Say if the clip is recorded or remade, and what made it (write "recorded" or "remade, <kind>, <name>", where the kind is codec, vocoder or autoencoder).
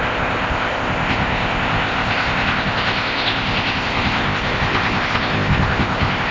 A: remade, codec, ZipCodec